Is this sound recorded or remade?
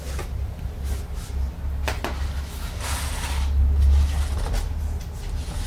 recorded